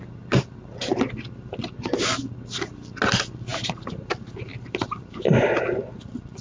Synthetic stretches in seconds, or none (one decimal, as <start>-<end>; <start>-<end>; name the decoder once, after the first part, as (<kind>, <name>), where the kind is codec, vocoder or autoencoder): none